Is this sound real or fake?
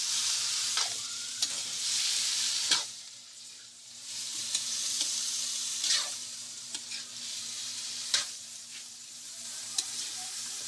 fake